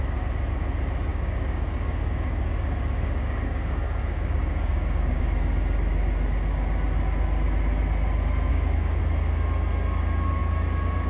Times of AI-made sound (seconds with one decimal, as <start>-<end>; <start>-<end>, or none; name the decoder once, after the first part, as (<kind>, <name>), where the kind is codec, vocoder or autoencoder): 1.1-5.2 (codec, DAC); 8.5-9.0